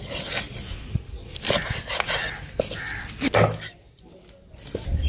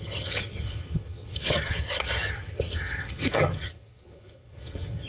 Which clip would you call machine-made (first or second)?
second